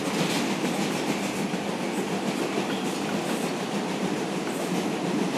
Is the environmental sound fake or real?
real